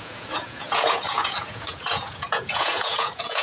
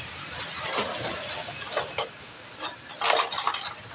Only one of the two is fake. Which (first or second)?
first